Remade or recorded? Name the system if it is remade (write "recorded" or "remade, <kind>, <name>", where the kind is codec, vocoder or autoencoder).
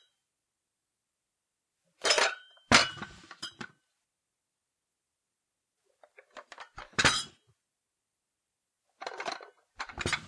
remade, vocoder, BigVGAN v2